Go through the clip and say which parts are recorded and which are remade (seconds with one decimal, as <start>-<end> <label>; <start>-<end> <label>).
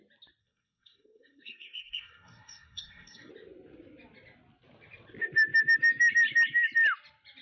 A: 0.0-0.4 recorded; 0.4-3.3 remade; 3.3-7.4 recorded